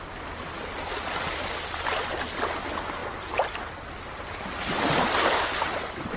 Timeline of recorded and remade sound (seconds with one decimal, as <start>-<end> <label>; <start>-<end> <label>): 0.0-6.2 recorded